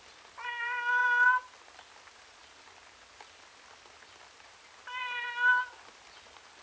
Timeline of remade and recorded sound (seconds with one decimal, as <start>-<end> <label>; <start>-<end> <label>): 0.0-6.6 recorded

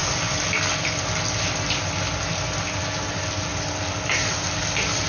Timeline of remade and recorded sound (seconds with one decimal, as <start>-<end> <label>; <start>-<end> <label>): 0.0-5.1 recorded

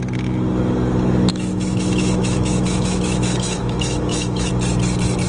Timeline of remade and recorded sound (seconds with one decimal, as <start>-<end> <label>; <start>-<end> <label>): 0.0-1.3 recorded; 1.3-4.5 remade; 4.5-5.3 recorded